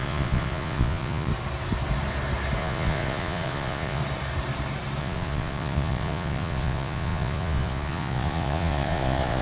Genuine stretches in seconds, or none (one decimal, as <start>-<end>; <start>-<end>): 1.3-2.6; 4.0-5.0